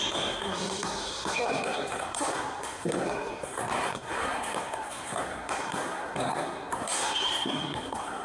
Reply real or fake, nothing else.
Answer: fake